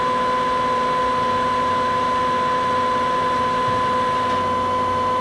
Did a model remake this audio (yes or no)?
no